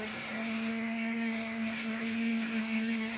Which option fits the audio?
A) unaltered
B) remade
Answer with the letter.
B